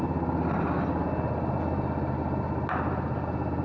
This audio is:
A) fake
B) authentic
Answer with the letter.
B